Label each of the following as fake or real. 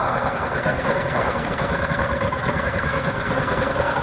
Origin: fake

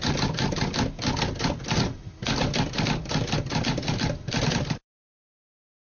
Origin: real